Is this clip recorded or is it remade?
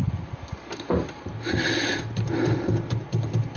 recorded